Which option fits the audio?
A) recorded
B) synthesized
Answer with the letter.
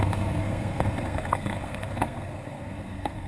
B